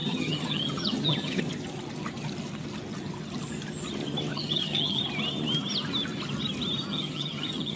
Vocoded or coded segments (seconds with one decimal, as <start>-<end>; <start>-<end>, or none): 0.0-1.4; 4.3-5.0; 6.9-7.8